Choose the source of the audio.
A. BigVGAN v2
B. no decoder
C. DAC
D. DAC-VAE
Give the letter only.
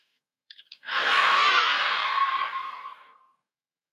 C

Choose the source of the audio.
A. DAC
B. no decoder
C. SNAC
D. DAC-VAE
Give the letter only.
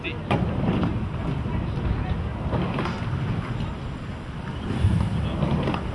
B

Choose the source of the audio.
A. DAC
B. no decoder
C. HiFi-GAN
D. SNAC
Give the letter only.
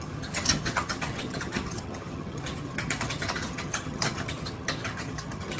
C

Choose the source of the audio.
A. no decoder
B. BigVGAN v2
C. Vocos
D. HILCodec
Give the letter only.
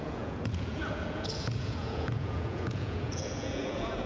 C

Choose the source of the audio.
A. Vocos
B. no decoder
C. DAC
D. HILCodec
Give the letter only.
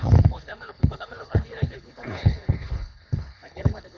D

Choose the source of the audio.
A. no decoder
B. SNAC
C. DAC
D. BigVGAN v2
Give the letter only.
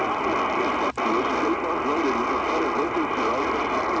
A